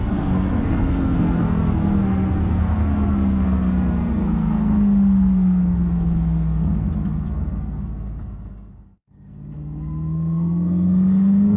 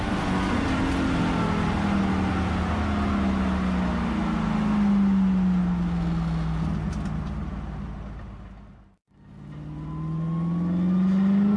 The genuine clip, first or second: second